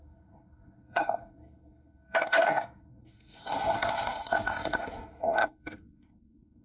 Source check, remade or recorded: remade